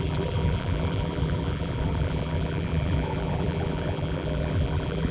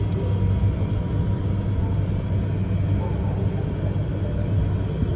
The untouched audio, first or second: second